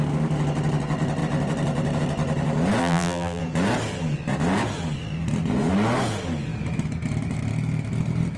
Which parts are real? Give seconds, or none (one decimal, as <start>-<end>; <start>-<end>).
0.0-2.8; 3.4-8.4